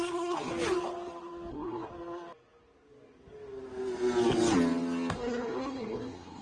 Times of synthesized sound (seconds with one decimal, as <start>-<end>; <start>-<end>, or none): 0.0-0.5; 1.5-1.9; 5.1-6.4